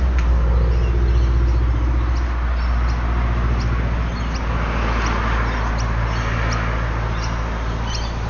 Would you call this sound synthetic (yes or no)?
no